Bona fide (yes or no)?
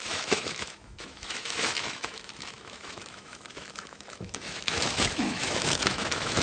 no